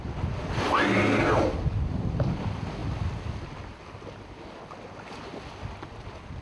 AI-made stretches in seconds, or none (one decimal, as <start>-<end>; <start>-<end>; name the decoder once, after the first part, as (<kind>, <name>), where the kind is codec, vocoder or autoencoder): none